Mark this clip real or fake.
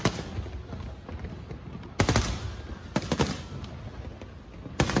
real